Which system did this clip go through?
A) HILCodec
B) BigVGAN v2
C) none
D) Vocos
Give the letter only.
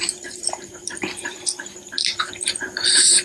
B